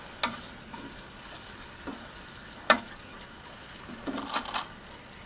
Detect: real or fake real